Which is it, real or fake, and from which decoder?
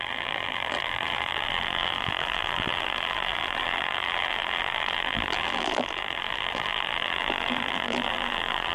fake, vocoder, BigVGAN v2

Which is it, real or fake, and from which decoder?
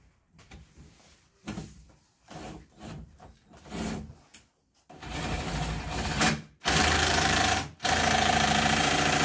fake, vocoder, BigVGAN v2